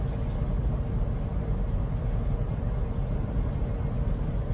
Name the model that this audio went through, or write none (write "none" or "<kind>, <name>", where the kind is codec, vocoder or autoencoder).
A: none